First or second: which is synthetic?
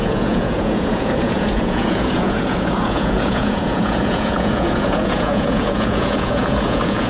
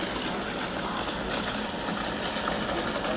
first